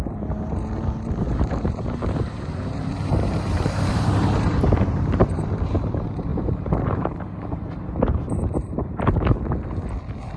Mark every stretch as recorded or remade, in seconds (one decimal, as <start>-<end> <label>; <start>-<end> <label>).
0.0-1.3 recorded; 1.3-5.5 remade; 5.5-6.3 recorded; 6.3-9.5 remade; 9.5-10.4 recorded